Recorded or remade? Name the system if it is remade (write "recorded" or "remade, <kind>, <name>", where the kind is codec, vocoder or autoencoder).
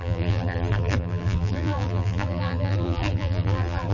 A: remade, vocoder, BigVGAN v2